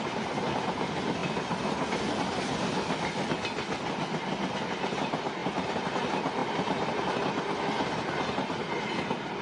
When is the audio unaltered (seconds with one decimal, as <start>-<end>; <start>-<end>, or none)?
0.0-5.4; 5.9-6.4; 7.0-9.4